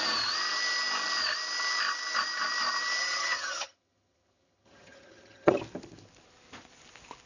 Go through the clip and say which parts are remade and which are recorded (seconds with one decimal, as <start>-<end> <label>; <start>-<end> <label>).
0.0-3.0 recorded; 3.0-5.6 remade; 5.6-7.3 recorded